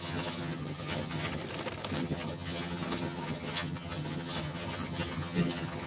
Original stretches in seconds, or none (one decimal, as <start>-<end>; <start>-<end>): 1.4-1.9